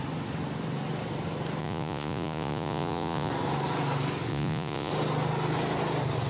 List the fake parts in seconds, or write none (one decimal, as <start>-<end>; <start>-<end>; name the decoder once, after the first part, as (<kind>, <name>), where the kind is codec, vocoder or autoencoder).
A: 1.6-3.3 (vocoder, Vocos); 4.3-4.9